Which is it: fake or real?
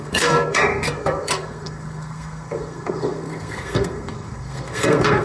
fake